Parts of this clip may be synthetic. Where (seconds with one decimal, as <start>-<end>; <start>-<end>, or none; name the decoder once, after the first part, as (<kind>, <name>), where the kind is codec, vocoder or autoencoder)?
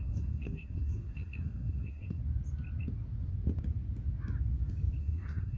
0.0-2.2 (codec, SNAC); 5.0-5.6